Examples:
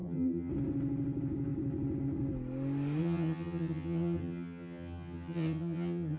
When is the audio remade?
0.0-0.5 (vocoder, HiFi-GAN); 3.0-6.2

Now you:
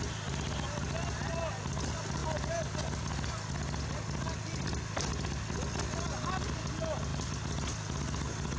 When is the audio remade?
none